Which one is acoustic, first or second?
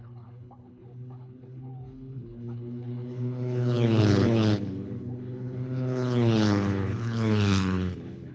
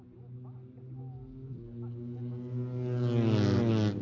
second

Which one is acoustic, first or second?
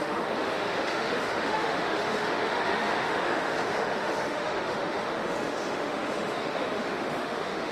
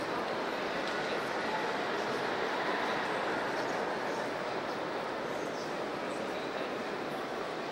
second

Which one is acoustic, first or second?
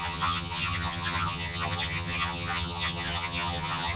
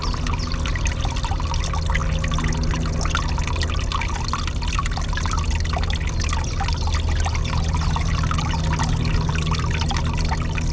second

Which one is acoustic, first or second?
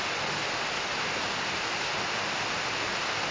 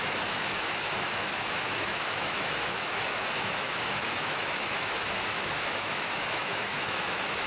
first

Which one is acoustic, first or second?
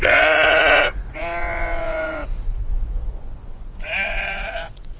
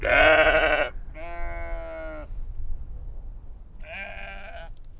second